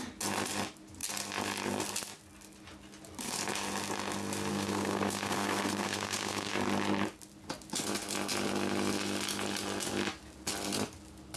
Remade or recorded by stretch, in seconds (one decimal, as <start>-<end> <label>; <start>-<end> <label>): 0.0-4.5 recorded; 4.5-6.5 remade; 6.5-11.4 recorded

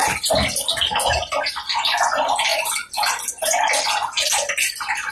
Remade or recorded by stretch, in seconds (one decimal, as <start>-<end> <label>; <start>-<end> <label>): 0.0-5.1 recorded